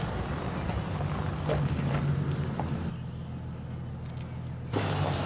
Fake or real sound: real